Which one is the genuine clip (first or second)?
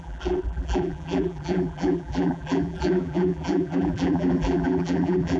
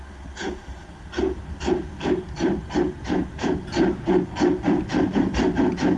second